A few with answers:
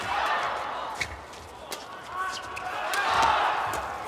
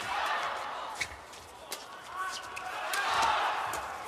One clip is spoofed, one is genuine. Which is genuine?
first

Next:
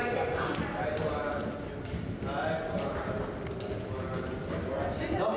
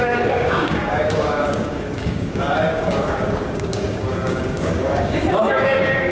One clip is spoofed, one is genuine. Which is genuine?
first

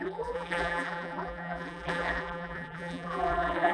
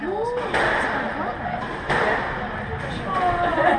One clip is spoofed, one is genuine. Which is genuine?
second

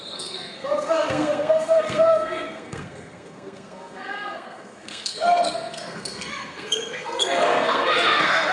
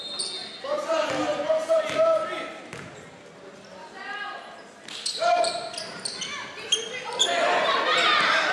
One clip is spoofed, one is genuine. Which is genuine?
second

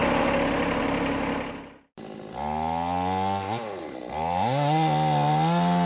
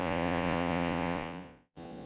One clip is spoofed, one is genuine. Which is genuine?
first